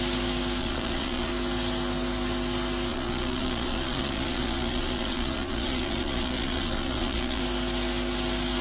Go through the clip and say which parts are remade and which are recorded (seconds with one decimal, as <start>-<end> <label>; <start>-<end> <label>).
0.0-0.6 recorded; 0.6-1.3 remade; 1.3-2.9 recorded; 2.9-7.4 remade; 7.4-8.6 recorded